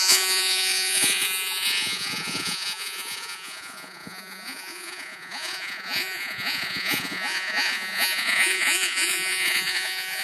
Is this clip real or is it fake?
fake